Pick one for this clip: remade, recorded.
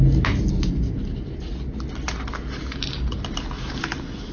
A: recorded